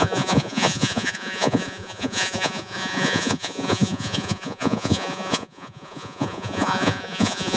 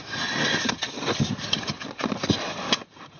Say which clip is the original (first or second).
second